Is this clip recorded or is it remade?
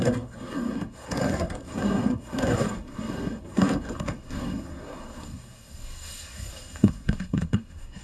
remade